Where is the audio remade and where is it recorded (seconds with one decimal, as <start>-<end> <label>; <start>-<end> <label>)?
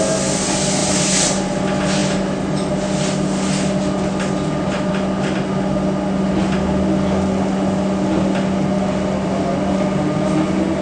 0.0-0.8 recorded; 0.8-1.6 remade; 1.6-10.8 recorded